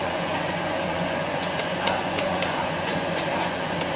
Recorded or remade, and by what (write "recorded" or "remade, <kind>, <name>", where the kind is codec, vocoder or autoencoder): remade, vocoder, Vocos